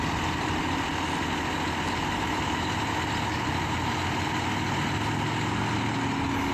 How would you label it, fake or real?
real